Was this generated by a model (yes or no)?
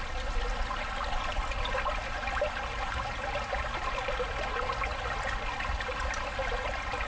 no